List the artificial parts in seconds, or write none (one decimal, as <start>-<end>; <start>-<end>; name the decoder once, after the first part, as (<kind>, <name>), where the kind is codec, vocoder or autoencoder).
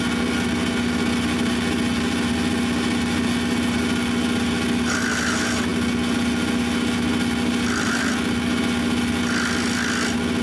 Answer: none